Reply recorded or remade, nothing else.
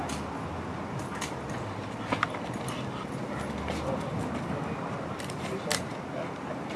recorded